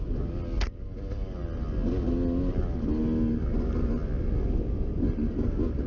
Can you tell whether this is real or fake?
real